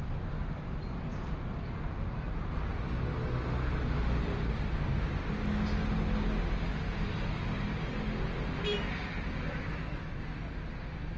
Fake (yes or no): no